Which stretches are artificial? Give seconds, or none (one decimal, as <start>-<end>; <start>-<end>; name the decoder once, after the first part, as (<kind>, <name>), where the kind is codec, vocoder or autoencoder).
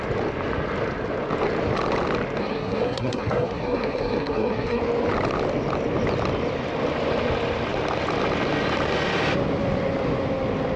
2.4-4.8 (codec, SNAC)